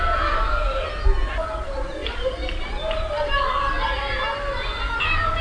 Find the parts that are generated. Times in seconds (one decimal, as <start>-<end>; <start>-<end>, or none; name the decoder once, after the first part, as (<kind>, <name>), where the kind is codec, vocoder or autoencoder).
none